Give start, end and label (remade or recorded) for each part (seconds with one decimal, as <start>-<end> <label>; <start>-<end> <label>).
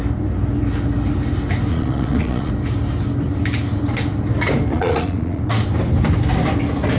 0.0-1.7 recorded; 1.7-2.5 remade; 2.5-4.7 recorded; 4.7-5.4 remade; 5.4-7.0 recorded